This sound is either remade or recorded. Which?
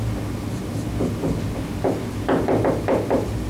recorded